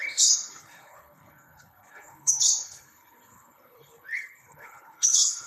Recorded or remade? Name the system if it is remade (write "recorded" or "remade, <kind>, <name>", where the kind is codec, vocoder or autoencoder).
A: remade, codec, HILCodec